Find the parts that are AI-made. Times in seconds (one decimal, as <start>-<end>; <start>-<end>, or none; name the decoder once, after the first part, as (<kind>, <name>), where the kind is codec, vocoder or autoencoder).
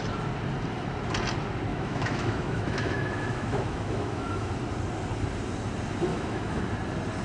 1.7-4.5 (autoencoder, DAC-VAE); 6.1-6.6